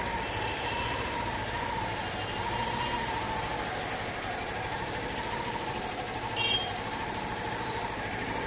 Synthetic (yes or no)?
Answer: no